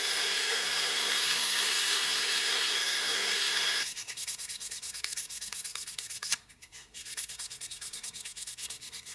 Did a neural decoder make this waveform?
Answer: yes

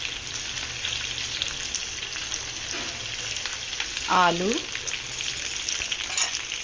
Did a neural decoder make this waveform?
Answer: no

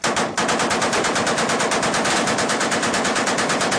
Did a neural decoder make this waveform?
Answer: no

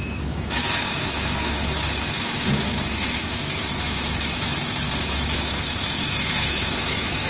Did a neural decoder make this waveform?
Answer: yes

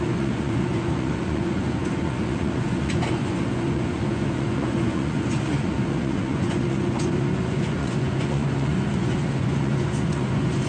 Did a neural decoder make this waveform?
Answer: yes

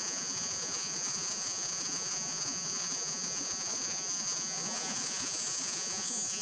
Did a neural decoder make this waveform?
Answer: yes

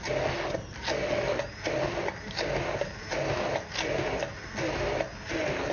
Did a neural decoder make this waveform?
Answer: no